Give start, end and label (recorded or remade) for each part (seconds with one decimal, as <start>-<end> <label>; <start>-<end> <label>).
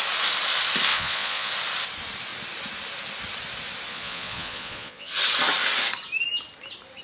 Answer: 0.0-0.9 recorded; 0.9-1.5 remade; 1.5-3.9 recorded; 3.9-5.1 remade; 5.1-7.0 recorded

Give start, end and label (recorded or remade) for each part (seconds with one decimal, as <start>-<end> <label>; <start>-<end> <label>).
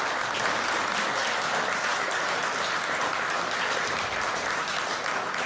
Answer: 0.0-5.5 recorded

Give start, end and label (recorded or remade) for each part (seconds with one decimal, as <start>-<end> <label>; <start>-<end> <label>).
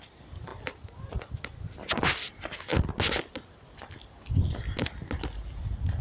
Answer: 0.0-6.0 recorded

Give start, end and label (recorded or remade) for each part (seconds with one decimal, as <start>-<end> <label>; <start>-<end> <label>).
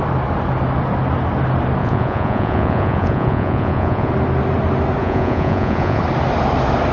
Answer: 0.0-1.8 recorded; 1.8-4.1 remade; 4.1-5.0 recorded; 5.0-6.0 remade; 6.0-6.9 recorded